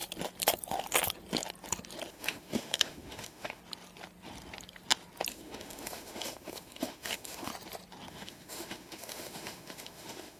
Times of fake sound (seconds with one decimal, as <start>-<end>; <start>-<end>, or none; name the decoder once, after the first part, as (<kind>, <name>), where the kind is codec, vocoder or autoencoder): 2.1-3.6 (autoencoder, DAC-VAE); 5.3-7.5; 8.1-10.4

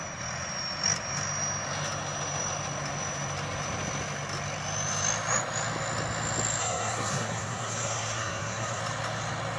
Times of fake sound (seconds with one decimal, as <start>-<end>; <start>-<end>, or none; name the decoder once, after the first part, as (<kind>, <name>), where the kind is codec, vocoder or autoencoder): 6.6-8.8 (codec, SNAC)